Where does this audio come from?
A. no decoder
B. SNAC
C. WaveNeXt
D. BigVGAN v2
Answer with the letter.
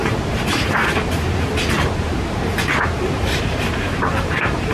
D